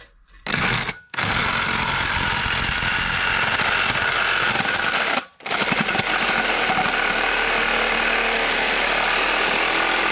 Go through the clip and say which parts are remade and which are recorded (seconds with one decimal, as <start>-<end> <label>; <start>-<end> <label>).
0.0-0.5 recorded; 0.5-1.4 remade; 1.4-10.1 recorded